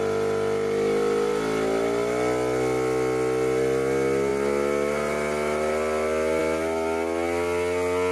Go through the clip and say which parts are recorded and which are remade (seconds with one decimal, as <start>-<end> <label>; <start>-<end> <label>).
0.0-8.1 recorded